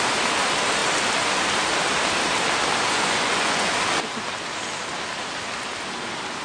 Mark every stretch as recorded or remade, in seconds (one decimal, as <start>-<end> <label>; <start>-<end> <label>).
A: 0.0-2.9 recorded; 2.9-3.7 remade; 3.7-6.4 recorded